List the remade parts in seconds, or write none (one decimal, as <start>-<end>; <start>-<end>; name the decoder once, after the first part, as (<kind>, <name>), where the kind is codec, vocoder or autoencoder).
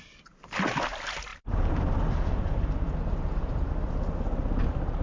1.3-3.7 (vocoder, BigVGAN v2)